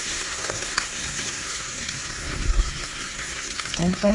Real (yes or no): no